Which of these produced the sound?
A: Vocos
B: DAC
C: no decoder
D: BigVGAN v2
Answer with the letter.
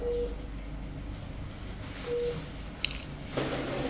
C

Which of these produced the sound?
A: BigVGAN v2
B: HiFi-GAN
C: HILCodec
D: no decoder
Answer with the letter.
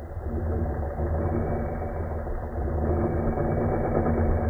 D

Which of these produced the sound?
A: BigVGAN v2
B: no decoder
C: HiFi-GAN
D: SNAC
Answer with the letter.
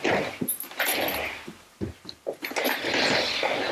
B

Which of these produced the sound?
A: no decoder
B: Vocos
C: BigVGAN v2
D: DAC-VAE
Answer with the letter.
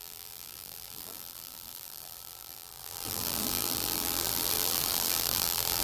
C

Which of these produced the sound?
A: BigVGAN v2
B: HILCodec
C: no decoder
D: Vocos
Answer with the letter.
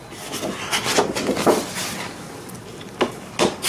C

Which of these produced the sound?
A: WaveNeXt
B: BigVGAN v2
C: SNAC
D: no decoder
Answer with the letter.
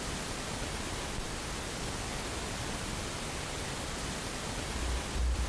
D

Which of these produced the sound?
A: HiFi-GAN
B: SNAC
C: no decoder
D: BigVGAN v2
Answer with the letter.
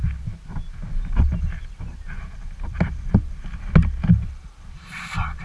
C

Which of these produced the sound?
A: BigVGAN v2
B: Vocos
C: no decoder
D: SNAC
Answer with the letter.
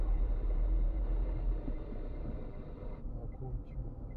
A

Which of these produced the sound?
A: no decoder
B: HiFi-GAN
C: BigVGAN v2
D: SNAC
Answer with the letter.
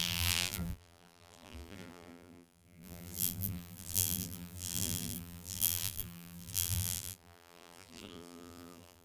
C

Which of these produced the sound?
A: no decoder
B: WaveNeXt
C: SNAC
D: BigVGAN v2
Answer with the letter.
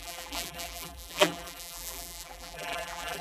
D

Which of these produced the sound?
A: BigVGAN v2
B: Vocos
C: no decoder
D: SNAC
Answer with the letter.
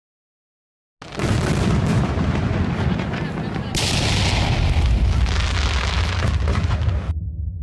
C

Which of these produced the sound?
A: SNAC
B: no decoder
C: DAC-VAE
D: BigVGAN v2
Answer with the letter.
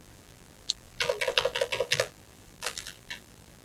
D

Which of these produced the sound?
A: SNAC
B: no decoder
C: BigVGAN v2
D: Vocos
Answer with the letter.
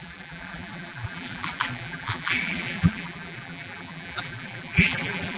C